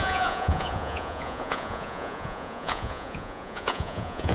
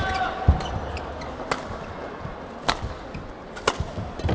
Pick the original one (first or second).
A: second